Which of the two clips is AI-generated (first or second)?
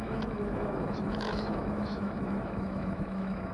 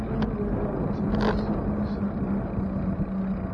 first